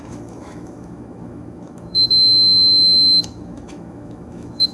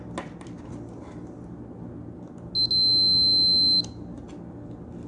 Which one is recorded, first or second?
second